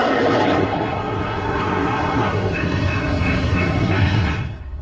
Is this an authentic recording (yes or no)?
no